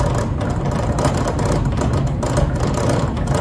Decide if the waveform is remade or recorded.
recorded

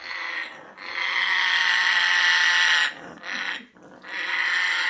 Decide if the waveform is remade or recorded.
recorded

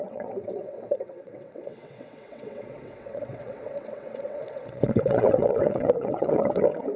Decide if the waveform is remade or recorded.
remade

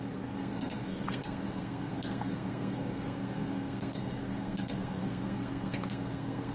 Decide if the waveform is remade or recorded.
remade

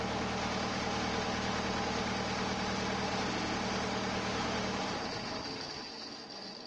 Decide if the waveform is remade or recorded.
recorded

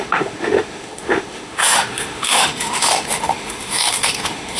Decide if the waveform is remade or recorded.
remade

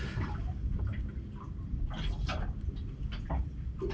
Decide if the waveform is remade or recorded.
recorded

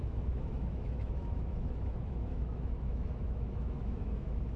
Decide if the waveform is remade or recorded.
remade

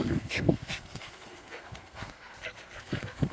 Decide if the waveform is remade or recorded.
remade